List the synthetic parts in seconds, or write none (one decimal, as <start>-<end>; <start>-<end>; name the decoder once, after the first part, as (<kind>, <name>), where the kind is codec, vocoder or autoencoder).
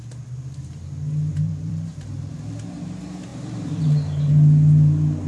1.3-2.3 (vocoder, BigVGAN v2); 3.3-4.3